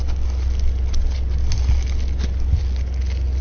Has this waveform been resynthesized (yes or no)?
no